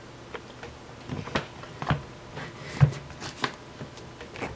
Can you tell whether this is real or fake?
real